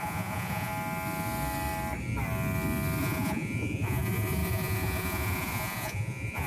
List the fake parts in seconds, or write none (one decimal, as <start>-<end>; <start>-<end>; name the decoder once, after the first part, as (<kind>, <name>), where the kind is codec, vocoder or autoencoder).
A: 0.0-0.7 (vocoder, Vocos); 3.0-6.5